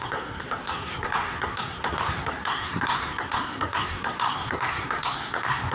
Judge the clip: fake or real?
fake